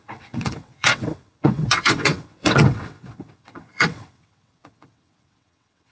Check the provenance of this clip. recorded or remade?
remade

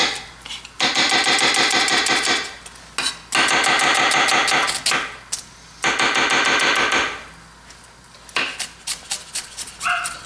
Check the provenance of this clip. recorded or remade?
recorded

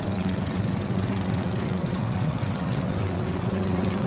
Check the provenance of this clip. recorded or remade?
remade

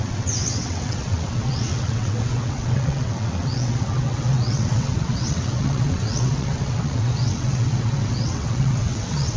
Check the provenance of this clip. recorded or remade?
remade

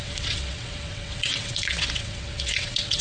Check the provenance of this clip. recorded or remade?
remade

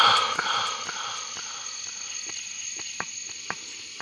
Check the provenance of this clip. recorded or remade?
recorded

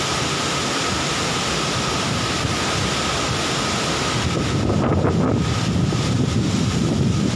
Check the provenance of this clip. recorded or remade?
recorded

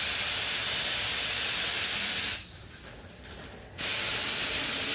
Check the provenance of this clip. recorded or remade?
recorded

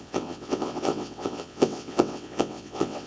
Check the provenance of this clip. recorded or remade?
remade